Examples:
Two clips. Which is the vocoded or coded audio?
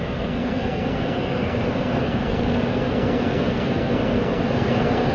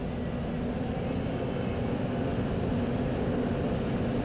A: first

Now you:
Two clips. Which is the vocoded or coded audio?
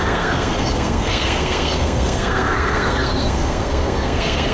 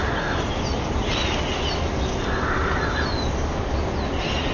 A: first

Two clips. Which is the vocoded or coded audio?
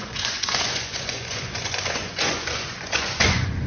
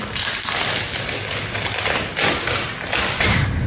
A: first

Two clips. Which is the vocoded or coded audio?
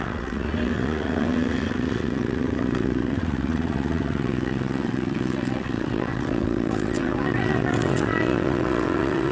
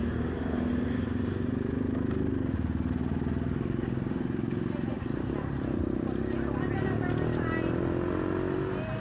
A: first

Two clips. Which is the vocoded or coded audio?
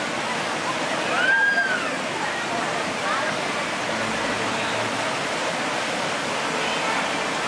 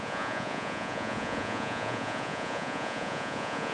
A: second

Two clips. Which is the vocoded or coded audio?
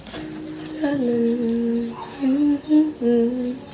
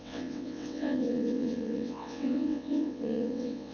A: second